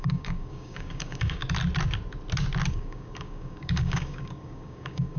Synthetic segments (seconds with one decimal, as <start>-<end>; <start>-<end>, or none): 0.0-1.4; 2.7-5.2